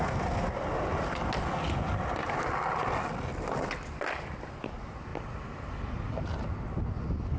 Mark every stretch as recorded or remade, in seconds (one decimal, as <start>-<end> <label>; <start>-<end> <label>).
0.0-7.4 recorded